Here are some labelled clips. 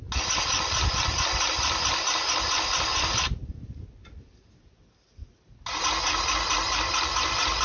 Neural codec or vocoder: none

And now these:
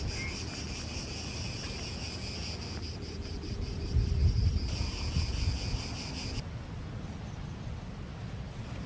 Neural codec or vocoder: none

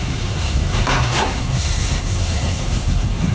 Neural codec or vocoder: codec, SNAC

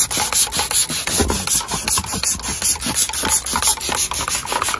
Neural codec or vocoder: none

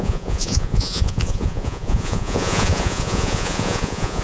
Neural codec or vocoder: vocoder, Vocos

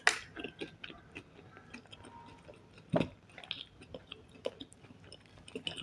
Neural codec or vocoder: none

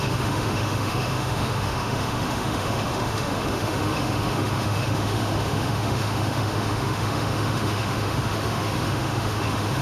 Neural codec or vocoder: autoencoder, DAC-VAE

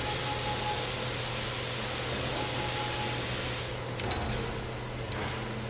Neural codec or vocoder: none